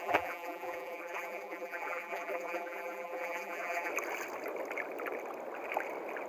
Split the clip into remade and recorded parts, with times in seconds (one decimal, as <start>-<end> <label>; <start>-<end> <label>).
0.0-3.9 remade; 3.9-6.3 recorded